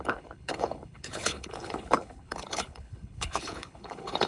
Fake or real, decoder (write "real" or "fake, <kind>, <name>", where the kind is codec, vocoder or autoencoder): fake, codec, HILCodec